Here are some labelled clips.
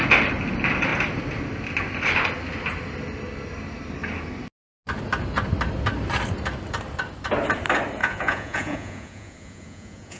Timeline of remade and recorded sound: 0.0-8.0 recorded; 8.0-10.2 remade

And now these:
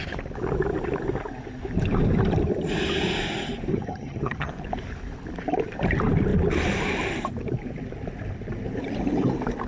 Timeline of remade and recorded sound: 0.0-3.7 recorded; 3.7-4.5 remade; 4.5-9.7 recorded

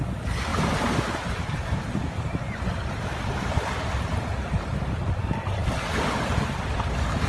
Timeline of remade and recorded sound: 0.0-0.5 recorded; 0.5-4.8 remade; 4.8-7.3 recorded

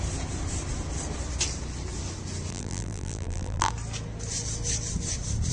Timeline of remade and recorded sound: 0.0-2.5 recorded; 2.5-3.7 remade; 3.7-5.5 recorded

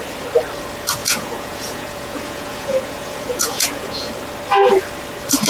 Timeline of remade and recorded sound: 0.0-1.0 recorded; 1.0-4.1 remade; 4.1-5.5 recorded

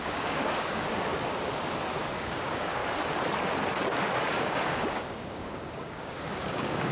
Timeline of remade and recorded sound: 0.0-1.1 remade; 1.1-2.1 recorded; 2.1-2.8 remade; 2.8-4.3 recorded; 4.3-6.9 remade

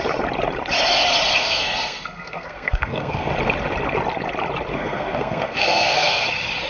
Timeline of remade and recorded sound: 0.0-1.4 recorded; 1.4-3.3 remade; 3.3-4.7 recorded; 4.7-6.3 remade; 6.3-6.7 recorded